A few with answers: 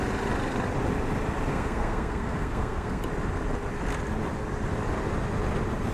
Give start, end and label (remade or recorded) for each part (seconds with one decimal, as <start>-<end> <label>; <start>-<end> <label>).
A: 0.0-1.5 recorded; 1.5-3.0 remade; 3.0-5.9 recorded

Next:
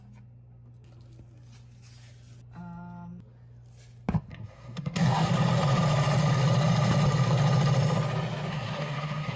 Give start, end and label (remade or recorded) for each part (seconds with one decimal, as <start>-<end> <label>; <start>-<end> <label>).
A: 0.0-4.3 recorded; 4.3-5.3 remade; 5.3-8.5 recorded; 8.5-9.4 remade

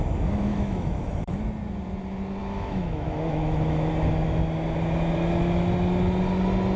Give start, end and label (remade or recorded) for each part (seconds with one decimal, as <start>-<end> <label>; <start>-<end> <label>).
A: 0.0-0.5 recorded; 0.5-1.4 remade; 1.4-2.4 recorded; 2.4-3.9 remade; 3.9-6.8 recorded

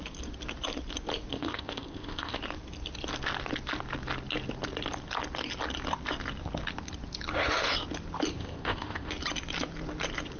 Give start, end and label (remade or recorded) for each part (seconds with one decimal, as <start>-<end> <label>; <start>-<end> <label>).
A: 0.0-1.3 recorded; 1.3-2.4 remade; 2.4-8.3 recorded; 8.3-9.1 remade; 9.1-10.4 recorded

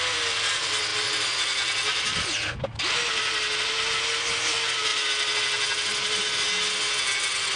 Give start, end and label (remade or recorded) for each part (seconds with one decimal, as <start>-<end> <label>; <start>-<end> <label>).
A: 0.0-7.6 recorded